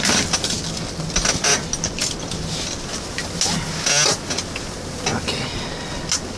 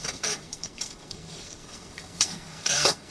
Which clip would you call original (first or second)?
first